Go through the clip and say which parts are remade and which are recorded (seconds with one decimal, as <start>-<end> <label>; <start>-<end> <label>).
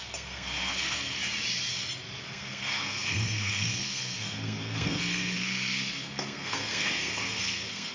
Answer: 0.0-1.2 remade; 1.2-2.2 recorded; 2.2-7.9 remade